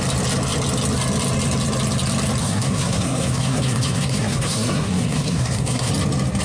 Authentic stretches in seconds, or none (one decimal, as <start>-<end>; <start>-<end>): 0.0-2.4; 5.9-6.4